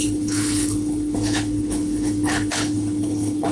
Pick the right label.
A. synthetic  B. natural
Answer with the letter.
A